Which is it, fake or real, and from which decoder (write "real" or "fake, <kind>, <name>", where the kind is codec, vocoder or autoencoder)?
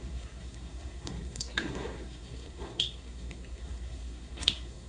fake, codec, SNAC